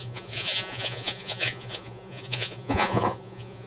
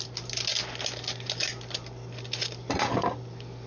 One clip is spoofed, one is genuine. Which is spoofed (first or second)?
first